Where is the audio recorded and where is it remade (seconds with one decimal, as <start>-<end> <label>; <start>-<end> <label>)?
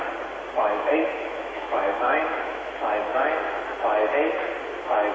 0.0-0.6 recorded; 0.6-2.7 remade; 2.7-5.1 recorded